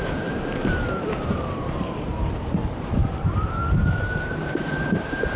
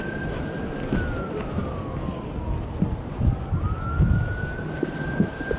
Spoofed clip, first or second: first